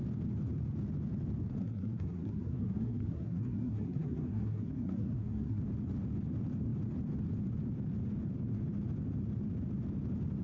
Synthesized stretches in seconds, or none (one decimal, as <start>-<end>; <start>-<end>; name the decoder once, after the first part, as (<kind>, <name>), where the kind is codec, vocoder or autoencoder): 1.6-5.6 (codec, SNAC)

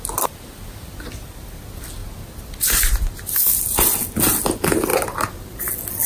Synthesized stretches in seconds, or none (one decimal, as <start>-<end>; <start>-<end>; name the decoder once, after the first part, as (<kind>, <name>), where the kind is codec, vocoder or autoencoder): 4.9-5.6 (vocoder, BigVGAN v2)

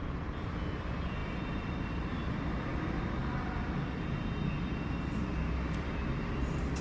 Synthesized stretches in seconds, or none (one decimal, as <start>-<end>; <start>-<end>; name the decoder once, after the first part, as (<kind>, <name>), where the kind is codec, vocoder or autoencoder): none

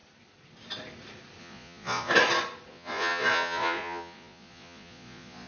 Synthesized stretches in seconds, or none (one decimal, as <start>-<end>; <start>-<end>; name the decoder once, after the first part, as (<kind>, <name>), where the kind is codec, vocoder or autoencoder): 1.4-2.1 (vocoder, Vocos); 2.7-5.5

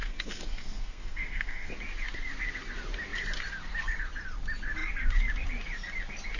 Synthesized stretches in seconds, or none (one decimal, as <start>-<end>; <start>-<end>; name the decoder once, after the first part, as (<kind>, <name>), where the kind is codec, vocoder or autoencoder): 0.0-1.7 (codec, SNAC)

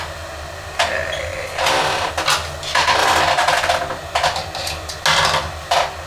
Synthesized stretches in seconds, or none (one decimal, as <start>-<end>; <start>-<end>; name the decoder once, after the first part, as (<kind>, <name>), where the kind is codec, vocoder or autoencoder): none